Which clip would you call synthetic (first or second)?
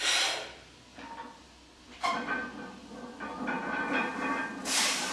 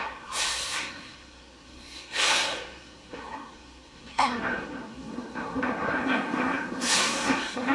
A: second